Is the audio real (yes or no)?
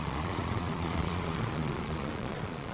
no